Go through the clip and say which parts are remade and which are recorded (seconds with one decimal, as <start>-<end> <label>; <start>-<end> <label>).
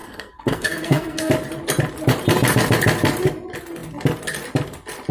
0.0-1.3 remade; 1.3-5.1 recorded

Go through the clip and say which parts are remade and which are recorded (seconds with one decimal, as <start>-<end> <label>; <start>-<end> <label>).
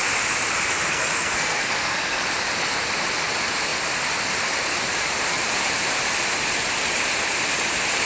0.0-0.9 recorded; 0.9-2.2 remade; 2.2-8.1 recorded